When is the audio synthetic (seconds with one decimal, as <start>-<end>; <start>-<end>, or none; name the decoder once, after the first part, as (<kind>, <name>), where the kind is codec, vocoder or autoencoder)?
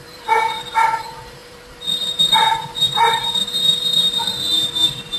0.0-5.2 (vocoder, BigVGAN v2)